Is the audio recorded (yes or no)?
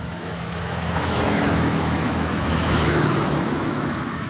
no